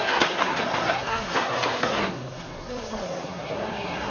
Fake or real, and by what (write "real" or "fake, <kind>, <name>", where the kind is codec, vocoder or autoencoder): fake, codec, SNAC